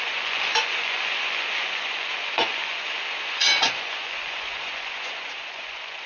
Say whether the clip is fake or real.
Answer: fake